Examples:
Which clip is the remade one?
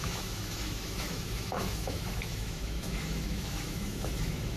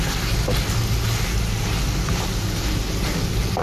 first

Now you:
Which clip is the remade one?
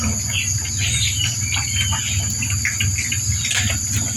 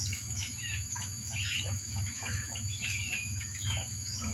second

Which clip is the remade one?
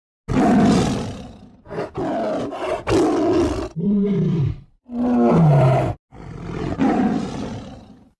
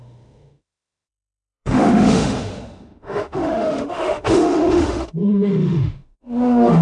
second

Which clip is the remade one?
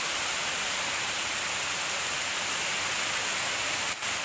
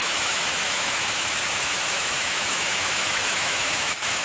second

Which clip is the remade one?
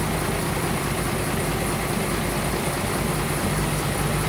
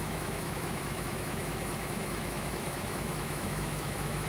second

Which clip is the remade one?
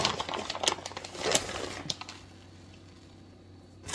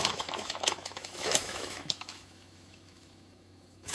second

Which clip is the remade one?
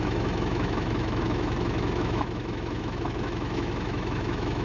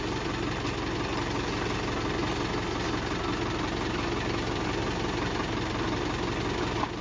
first